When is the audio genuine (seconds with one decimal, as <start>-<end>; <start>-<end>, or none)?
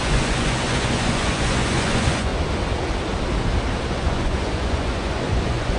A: 2.3-3.8